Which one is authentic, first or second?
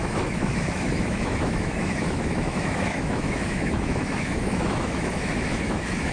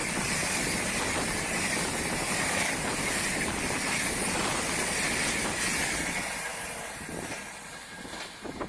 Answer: second